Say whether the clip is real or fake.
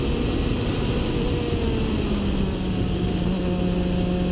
real